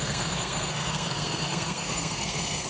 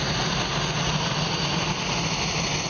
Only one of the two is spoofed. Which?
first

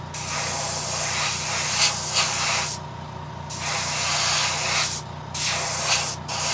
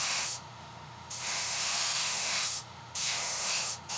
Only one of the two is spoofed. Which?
second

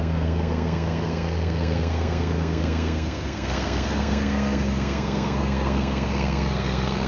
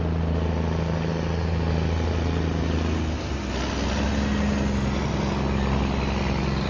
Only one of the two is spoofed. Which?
first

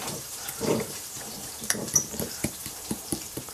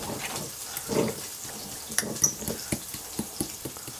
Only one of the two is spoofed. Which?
first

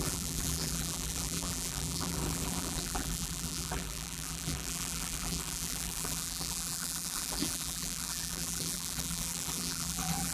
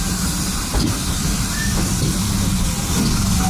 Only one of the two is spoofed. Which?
first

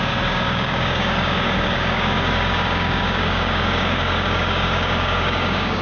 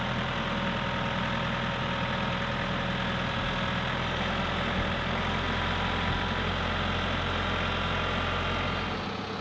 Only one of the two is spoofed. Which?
first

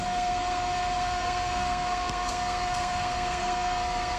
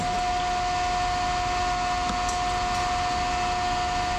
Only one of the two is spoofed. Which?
first